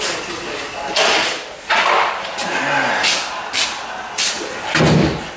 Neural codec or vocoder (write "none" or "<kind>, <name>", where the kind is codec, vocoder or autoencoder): none